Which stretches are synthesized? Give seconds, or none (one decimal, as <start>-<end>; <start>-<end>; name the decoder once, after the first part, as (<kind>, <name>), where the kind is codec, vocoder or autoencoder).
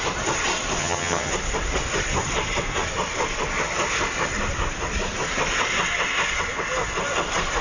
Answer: 0.8-1.3 (vocoder, HiFi-GAN)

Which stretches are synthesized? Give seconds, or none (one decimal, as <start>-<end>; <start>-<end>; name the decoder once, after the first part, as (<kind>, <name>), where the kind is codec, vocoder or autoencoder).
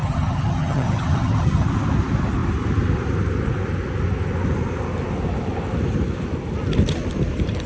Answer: 0.0-1.7 (vocoder, HiFi-GAN)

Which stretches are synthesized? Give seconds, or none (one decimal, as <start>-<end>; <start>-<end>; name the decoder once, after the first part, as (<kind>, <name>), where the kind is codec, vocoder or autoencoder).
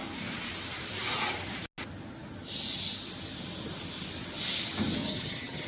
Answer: 5.0-5.7 (vocoder, HiFi-GAN)